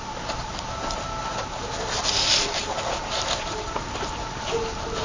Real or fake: real